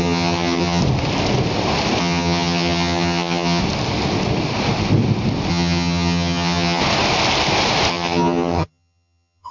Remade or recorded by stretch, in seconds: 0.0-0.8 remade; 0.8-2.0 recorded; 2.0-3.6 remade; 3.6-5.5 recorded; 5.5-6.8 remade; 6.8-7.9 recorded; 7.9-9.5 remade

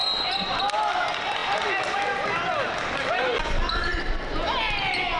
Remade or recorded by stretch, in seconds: 0.0-5.2 recorded